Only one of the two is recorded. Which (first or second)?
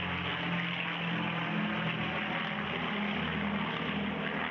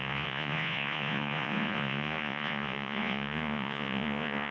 first